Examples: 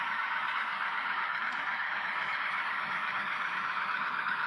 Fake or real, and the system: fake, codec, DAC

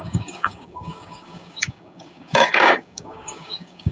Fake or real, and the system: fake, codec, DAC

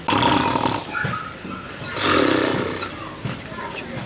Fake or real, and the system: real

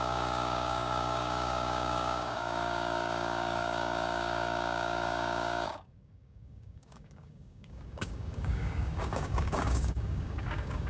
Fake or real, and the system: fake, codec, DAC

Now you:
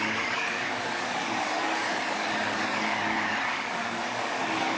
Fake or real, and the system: fake, codec, DAC